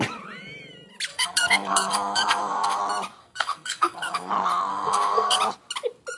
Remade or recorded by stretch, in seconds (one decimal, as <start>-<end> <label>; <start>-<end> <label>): 0.0-1.1 recorded; 1.1-2.8 remade; 2.8-3.2 recorded; 3.2-4.3 remade; 4.3-4.7 recorded; 4.7-5.4 remade; 5.4-6.2 recorded